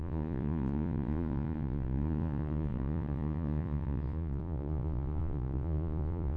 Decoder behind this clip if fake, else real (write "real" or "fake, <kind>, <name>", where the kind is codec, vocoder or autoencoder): fake, vocoder, Vocos